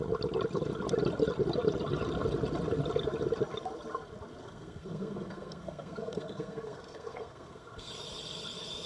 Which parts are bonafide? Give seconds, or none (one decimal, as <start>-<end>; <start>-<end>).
0.0-4.4; 7.9-8.9